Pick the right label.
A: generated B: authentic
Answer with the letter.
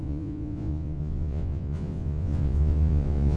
A